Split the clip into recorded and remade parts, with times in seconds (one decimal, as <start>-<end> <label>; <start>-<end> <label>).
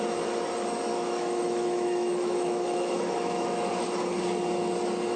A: 0.0-0.9 recorded; 0.9-4.0 remade; 4.0-5.2 recorded